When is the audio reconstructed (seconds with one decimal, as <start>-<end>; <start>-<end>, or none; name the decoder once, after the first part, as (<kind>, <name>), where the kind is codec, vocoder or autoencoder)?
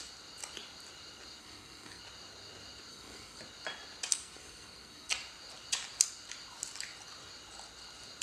1.4-2.0 (codec, SNAC); 2.9-3.4; 4.1-5.1